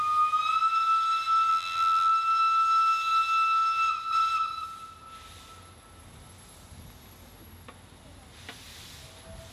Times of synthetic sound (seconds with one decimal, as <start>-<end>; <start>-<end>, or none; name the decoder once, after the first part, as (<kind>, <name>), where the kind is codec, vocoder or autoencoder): 1.5-2.1 (vocoder, BigVGAN v2)